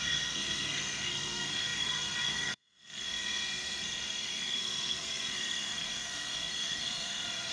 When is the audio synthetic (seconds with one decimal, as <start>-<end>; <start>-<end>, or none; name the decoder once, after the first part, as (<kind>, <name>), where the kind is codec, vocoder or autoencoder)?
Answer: 0.0-7.5 (codec, SNAC)